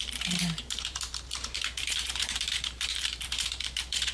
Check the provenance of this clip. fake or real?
fake